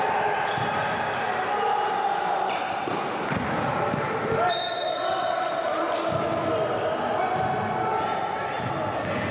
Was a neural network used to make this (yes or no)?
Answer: no